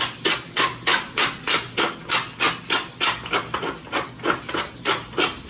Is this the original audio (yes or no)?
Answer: yes